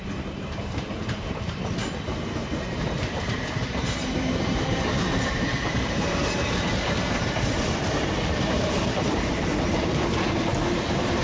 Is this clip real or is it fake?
fake